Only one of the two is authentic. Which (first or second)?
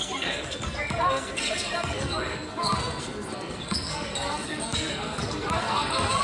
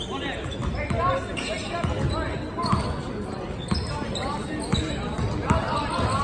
second